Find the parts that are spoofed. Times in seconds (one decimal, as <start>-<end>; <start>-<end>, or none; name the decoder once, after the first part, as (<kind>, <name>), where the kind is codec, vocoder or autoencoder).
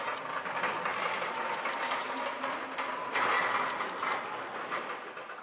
none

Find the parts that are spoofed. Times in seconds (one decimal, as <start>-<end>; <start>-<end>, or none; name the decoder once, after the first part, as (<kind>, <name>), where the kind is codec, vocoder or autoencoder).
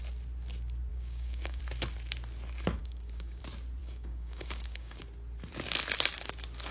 0.9-1.6 (codec, DAC); 2.8-3.4; 3.8-5.0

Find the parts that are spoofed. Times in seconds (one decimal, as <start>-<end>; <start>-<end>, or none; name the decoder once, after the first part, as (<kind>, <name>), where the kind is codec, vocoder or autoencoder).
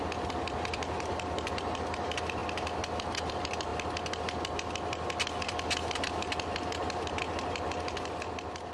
none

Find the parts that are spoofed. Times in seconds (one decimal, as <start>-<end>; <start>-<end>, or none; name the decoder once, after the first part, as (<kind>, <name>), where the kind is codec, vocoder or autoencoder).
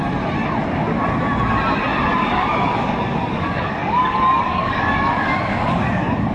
2.2-6.3 (codec, DAC)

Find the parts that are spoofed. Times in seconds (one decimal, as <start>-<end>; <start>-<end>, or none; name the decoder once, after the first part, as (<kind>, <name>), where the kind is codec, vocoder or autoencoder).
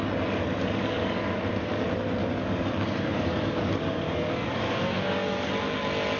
0.6-1.4 (codec, DAC); 2.2-5.5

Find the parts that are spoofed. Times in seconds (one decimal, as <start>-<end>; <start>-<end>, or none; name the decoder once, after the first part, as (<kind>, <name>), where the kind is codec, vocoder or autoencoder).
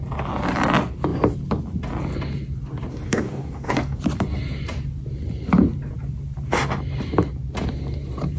2.9-4.0 (codec, DAC)